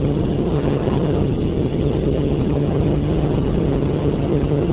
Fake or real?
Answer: fake